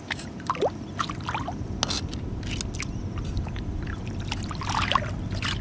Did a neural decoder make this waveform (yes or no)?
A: no